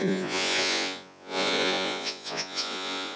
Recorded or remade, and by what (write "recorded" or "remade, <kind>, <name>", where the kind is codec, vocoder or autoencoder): remade, vocoder, Vocos